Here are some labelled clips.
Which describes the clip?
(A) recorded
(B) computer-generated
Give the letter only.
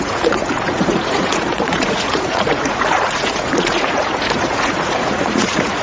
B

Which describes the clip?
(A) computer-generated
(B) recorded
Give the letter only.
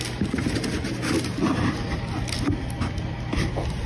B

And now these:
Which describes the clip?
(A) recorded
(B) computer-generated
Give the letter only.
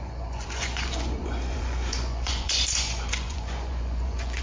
B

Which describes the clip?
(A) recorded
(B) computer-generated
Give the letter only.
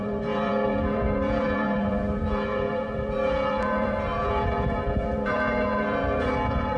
B